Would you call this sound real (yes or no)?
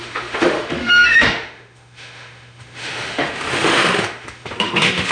no